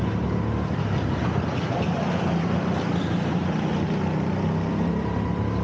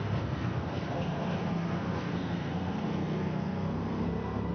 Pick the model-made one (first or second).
second